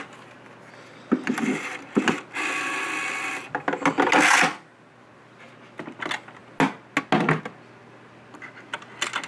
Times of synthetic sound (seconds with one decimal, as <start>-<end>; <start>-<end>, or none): none